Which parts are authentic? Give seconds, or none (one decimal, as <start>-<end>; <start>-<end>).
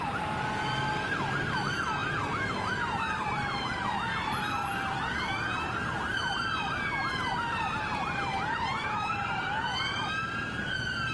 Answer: 2.0-7.3; 9.7-10.6